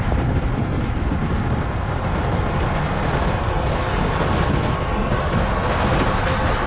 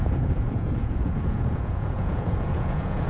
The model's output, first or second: second